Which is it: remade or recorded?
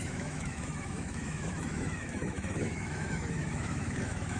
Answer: remade